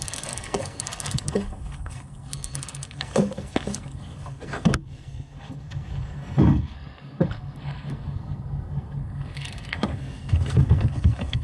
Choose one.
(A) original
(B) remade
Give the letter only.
B